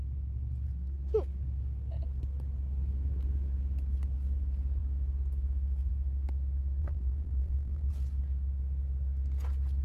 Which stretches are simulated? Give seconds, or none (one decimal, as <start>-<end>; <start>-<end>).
6.8-7.9